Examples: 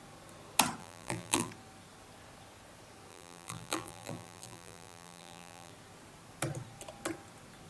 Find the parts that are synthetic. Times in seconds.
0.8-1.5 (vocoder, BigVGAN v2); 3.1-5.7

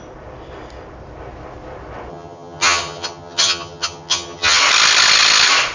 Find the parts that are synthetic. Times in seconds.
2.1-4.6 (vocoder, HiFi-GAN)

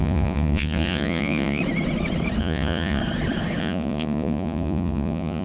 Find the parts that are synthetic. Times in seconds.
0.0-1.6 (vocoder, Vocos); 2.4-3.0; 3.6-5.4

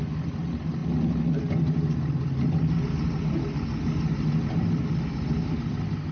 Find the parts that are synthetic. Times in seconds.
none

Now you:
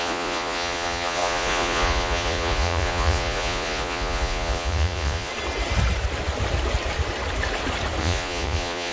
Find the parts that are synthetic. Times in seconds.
0.0-5.3 (vocoder, Vocos); 8.0-8.9

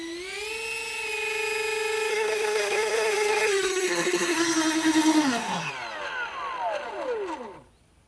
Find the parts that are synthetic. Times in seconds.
2.1-5.7 (codec, SNAC)

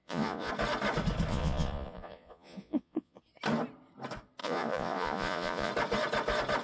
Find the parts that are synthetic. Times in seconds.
0.0-0.5 (vocoder, Vocos); 1.3-3.2; 4.4-5.7

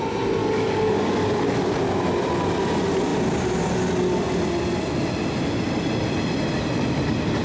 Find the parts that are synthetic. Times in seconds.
0.4-1.8 (codec, DAC)